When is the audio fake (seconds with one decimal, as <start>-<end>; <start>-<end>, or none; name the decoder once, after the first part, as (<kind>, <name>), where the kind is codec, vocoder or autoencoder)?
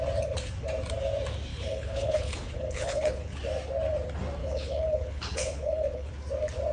1.5-3.4 (codec, HILCodec); 4.4-6.1